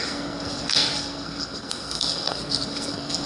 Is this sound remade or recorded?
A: remade